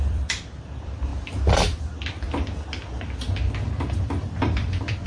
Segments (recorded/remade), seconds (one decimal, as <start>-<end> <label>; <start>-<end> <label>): 0.0-1.1 remade; 1.1-4.0 recorded; 4.0-5.1 remade